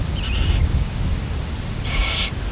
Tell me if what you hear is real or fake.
fake